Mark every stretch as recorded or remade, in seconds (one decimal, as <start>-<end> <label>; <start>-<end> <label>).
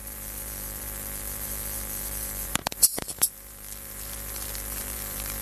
0.0-5.4 remade